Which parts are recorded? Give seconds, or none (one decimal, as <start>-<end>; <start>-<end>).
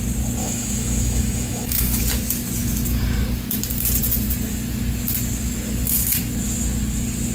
0.0-0.4; 2.0-7.3